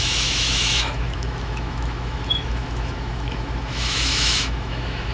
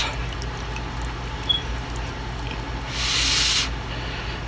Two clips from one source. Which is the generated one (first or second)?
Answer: first